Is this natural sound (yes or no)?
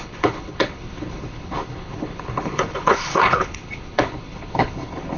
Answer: no